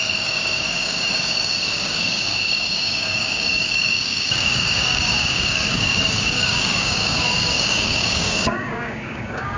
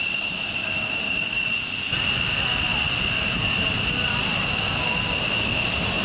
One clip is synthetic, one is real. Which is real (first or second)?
second